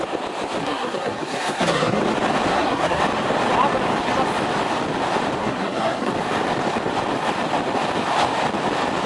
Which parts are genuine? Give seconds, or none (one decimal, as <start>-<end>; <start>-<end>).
0.0-0.6; 2.0-2.5; 3.0-5.4; 6.1-9.1